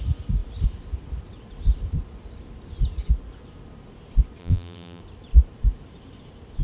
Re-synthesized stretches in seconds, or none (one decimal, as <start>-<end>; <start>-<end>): 4.4-5.0